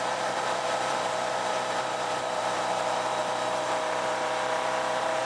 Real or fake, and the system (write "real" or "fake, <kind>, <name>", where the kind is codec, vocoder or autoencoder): fake, vocoder, BigVGAN v2